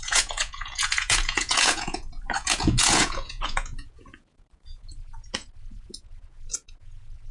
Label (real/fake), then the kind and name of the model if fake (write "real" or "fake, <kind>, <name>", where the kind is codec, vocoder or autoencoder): fake, vocoder, Vocos